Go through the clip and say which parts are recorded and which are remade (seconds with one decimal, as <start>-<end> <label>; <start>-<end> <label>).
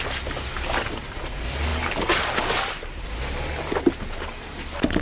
0.0-5.0 recorded